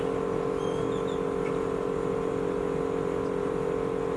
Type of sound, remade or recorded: recorded